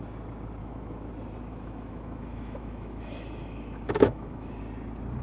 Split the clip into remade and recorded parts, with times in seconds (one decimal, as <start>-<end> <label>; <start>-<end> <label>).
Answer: 0.0-0.6 recorded; 0.6-1.1 remade; 1.1-1.5 recorded; 1.5-4.6 remade; 4.6-5.2 recorded